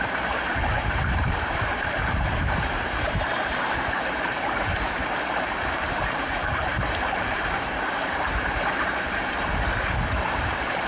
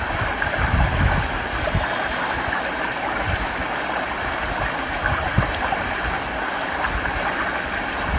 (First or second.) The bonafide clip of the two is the second